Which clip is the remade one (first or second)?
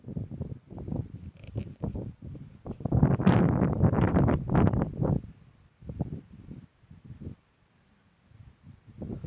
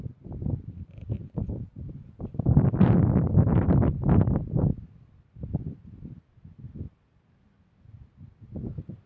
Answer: first